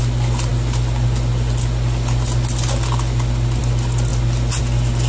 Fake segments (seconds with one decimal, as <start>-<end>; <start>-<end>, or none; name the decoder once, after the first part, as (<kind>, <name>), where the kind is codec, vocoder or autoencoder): none